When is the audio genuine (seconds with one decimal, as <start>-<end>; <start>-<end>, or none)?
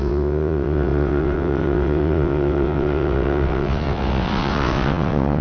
none